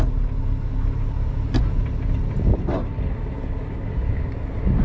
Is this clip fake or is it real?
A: real